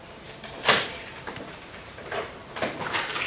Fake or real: fake